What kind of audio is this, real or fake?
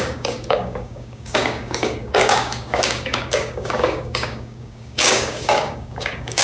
fake